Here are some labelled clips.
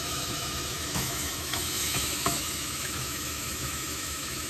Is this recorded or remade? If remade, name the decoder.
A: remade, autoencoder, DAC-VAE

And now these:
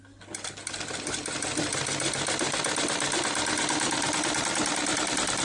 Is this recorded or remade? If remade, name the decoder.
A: remade, vocoder, BigVGAN v2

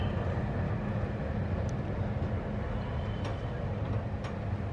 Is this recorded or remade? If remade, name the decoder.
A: recorded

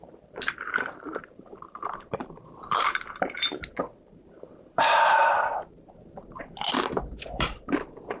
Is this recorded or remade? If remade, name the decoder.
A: remade, vocoder, BigVGAN v2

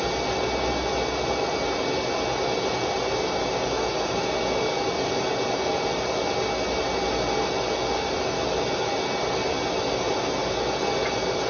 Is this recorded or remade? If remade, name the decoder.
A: recorded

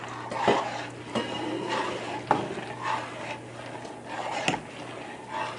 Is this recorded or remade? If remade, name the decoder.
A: recorded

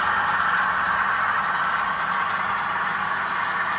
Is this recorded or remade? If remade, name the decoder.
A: recorded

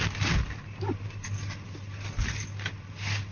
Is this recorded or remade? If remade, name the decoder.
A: remade, vocoder, BigVGAN v2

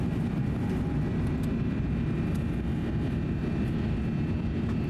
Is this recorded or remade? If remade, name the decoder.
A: recorded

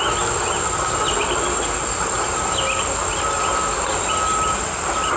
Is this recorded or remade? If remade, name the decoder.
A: recorded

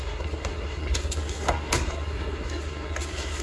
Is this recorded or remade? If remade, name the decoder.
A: remade, codec, SNAC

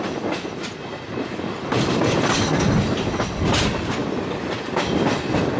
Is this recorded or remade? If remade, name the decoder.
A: recorded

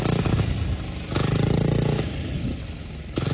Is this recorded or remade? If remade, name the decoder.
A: recorded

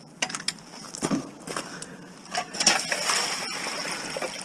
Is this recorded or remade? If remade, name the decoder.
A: recorded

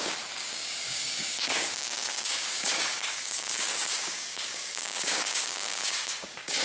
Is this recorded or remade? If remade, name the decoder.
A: remade, codec, DAC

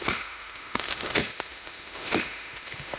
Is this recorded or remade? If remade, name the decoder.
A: remade, autoencoder, DAC-VAE